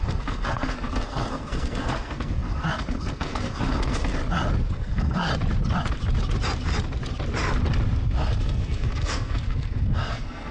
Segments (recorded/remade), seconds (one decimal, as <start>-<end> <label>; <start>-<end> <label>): 0.0-4.2 remade; 4.2-4.7 recorded; 4.7-5.3 remade; 5.3-8.4 recorded; 8.4-10.5 remade